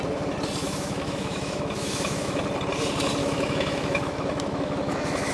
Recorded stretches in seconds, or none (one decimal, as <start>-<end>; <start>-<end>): 0.0-0.6; 2.4-3.2